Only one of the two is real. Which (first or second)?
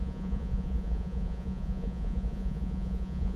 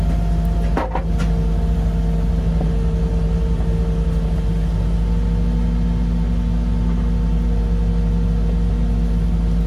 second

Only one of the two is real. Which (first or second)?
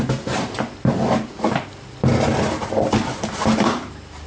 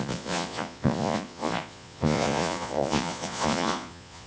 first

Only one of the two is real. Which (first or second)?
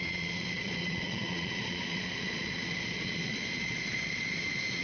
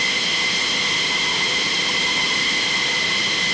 second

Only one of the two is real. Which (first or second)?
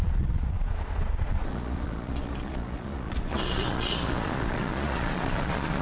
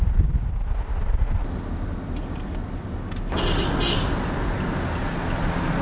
second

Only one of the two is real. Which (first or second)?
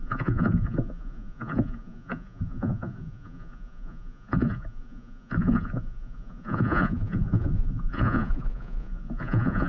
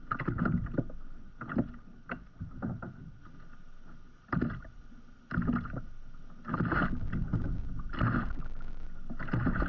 second